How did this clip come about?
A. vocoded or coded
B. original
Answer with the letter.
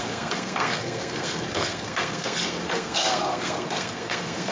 A